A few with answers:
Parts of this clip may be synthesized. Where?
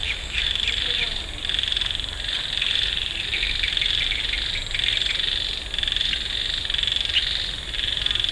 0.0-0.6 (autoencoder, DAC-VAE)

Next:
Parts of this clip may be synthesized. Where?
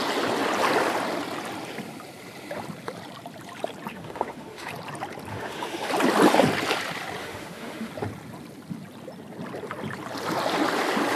3.9-4.7 (autoencoder, DAC-VAE); 5.3-5.9; 7.2-7.9